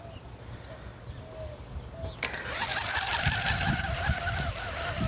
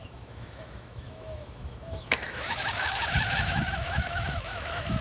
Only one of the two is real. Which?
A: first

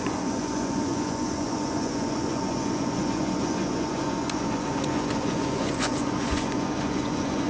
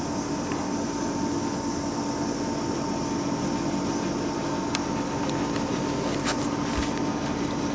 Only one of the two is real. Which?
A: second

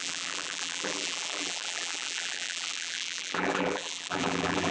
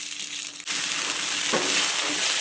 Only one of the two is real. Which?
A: second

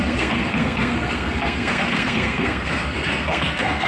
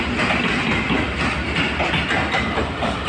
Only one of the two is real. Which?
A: second